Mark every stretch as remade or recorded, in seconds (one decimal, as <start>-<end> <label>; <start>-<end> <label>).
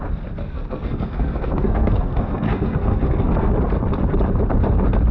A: 0.0-0.4 recorded; 0.4-3.5 remade; 3.5-5.1 recorded